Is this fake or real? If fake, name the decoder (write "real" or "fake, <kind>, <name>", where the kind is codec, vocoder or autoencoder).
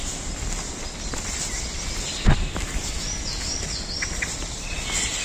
real